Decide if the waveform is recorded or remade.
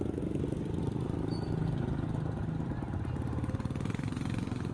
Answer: recorded